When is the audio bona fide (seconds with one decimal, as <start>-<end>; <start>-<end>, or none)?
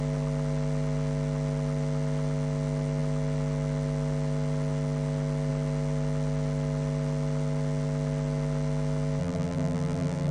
0.0-9.2